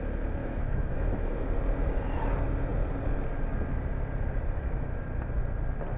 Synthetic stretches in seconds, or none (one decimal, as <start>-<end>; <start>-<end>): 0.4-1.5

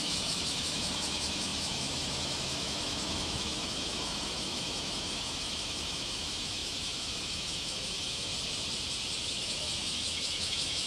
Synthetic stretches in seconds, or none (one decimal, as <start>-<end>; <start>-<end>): 0.0-8.3; 9.2-10.9

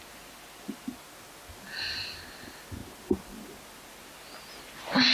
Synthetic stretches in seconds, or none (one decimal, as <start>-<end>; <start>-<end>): none

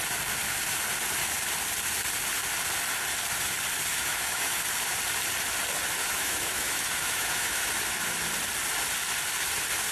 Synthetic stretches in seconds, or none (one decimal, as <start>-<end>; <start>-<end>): 3.9-4.6; 6.0-7.7

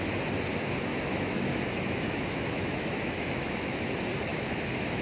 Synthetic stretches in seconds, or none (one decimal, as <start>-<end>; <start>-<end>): 0.9-3.9; 4.3-5.0